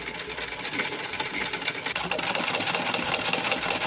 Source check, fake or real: real